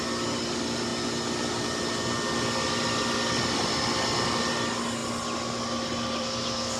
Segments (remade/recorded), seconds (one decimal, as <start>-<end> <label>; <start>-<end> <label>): 0.0-6.8 recorded

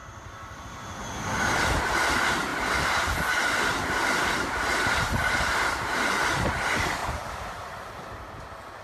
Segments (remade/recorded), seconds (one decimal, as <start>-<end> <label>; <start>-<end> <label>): 0.0-8.8 recorded